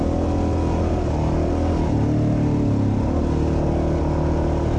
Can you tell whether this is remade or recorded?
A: recorded